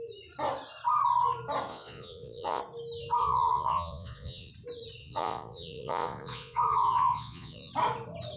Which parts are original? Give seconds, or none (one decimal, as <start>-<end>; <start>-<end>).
0.0-1.7; 2.6-3.2; 4.5-5.0; 7.7-8.4